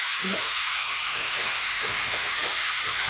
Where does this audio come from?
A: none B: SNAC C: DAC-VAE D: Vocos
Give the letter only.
C